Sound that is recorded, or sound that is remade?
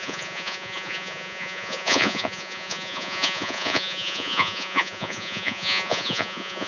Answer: remade